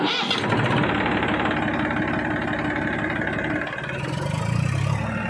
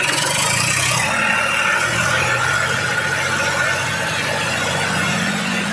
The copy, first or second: second